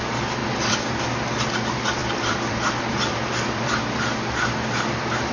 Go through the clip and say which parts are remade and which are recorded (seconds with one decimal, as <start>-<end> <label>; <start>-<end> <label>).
0.0-0.4 recorded; 0.4-1.0 remade; 1.0-2.0 recorded; 2.0-3.8 remade; 3.8-5.3 recorded